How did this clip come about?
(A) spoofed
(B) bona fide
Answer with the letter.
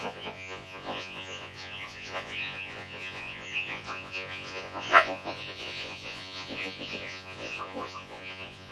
A